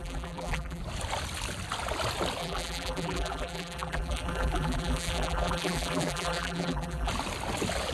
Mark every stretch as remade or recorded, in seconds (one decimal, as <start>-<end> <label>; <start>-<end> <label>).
0.0-0.8 remade; 0.8-2.4 recorded; 2.4-7.1 remade; 7.1-7.9 recorded